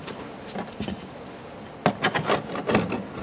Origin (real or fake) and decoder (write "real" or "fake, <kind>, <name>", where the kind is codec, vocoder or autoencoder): real